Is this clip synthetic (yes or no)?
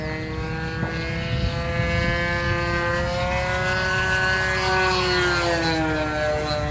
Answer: no